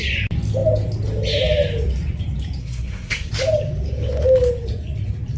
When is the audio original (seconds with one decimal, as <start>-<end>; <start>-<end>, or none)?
0.0-2.6; 3.3-5.4